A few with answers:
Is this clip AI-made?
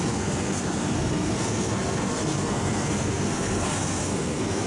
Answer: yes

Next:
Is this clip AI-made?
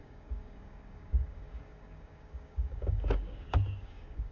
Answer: yes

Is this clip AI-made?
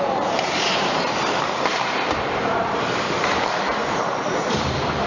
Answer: yes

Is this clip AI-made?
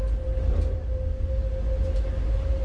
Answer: no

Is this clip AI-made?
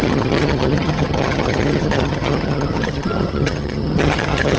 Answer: yes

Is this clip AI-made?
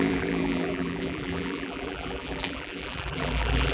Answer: yes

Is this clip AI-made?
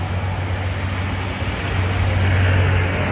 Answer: no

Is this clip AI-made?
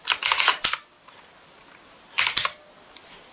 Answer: yes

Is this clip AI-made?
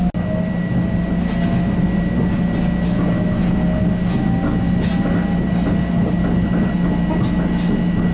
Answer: no